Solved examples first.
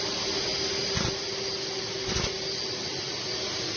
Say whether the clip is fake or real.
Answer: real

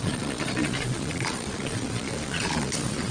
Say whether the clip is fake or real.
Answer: fake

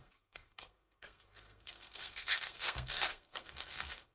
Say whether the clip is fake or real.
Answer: fake